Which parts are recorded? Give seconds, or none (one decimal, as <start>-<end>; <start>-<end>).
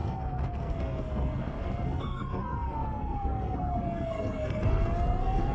none